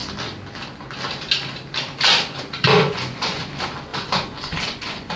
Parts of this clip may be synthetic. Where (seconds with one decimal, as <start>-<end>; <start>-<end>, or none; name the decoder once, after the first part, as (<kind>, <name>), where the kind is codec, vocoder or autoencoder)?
2.7-3.5 (vocoder, Vocos); 3.9-5.2